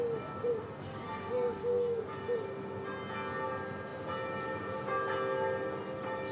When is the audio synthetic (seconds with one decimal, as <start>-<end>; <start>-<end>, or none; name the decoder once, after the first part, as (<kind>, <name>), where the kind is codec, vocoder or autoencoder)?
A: 0.5-2.0 (codec, SNAC)